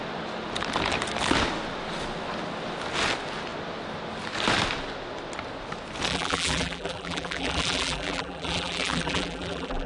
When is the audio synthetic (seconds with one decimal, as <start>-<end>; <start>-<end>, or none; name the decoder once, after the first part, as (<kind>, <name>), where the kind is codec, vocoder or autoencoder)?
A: 6.1-9.9 (vocoder, BigVGAN v2)